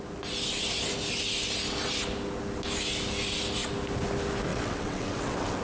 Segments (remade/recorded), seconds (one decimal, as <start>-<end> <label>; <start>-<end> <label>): 0.0-4.5 recorded; 4.5-5.6 remade